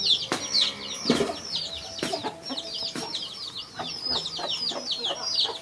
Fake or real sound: real